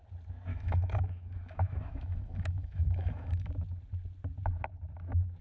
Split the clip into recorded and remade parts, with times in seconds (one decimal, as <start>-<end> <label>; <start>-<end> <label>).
0.0-0.5 recorded; 0.5-3.5 remade; 3.5-5.4 recorded